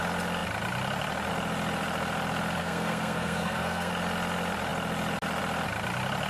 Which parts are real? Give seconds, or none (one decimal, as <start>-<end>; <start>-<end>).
0.0-2.6; 3.9-6.3